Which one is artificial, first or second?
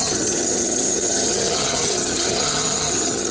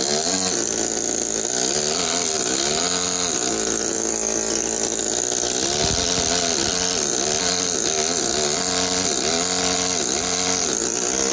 first